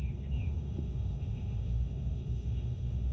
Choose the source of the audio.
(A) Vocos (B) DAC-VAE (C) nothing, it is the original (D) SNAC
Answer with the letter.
B